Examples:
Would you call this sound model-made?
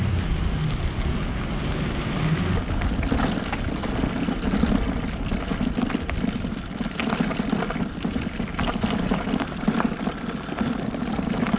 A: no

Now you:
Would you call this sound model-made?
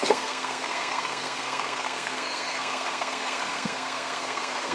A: yes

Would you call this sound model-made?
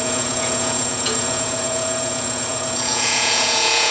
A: yes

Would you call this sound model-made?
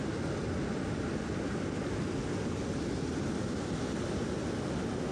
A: no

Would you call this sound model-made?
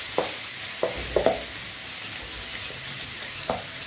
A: no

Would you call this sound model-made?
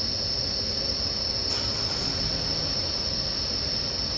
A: no